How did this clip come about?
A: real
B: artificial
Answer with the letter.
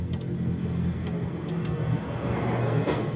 B